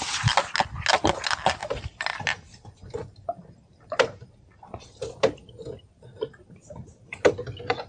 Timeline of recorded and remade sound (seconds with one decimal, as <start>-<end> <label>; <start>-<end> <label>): 0.0-7.9 recorded